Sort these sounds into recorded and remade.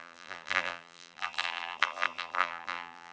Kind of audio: remade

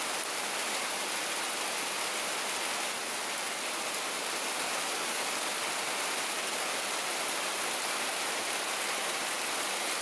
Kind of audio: recorded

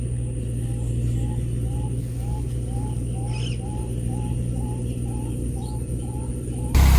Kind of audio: recorded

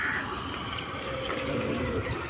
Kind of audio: recorded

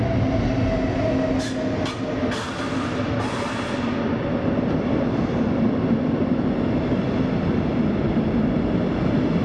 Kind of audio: recorded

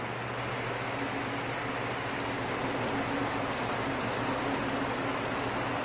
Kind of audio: recorded